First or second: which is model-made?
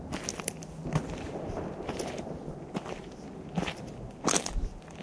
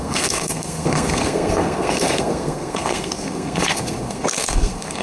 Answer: second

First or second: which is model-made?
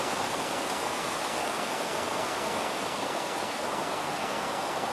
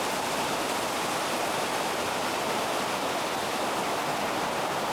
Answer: first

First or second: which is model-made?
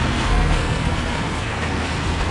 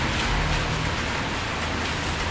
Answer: first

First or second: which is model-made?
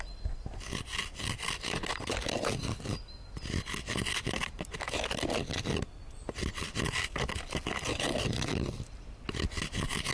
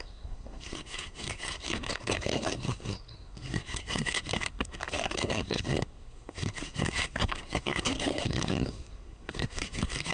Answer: second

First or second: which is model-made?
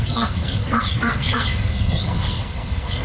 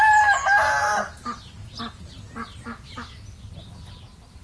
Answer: first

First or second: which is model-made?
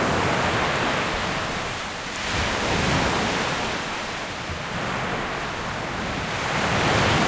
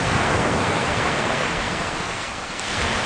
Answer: second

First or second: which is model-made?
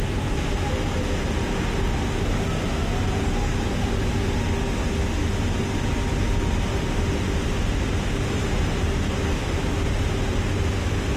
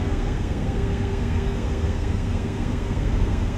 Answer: second